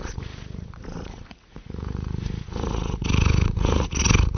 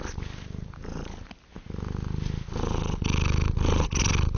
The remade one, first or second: first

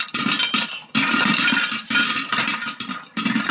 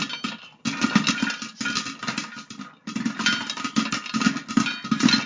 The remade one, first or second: first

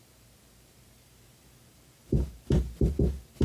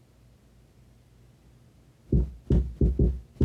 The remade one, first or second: first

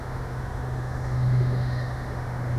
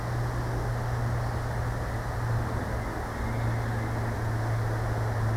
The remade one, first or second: first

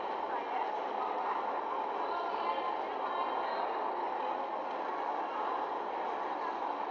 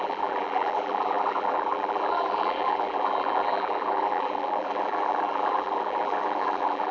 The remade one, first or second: second